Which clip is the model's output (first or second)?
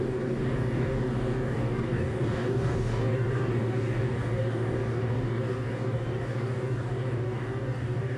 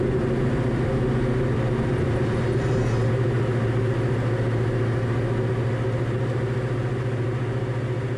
first